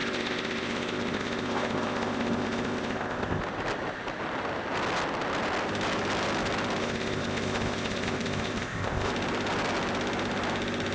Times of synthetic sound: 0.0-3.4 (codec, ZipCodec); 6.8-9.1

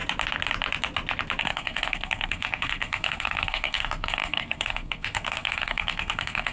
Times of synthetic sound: 1.4-6.5 (codec, SNAC)

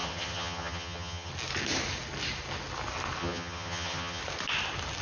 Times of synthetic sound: 0.0-1.3 (vocoder, HiFi-GAN); 3.2-4.2